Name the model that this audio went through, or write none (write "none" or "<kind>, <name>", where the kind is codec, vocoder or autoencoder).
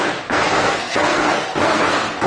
codec, SNAC